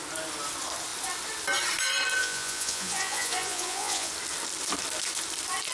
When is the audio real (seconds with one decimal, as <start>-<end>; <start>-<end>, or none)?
0.0-2.2; 4.1-5.7